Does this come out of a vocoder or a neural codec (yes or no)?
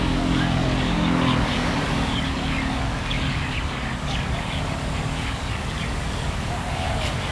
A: yes